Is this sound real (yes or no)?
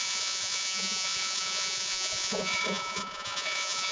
no